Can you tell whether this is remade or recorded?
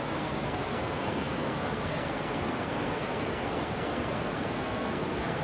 remade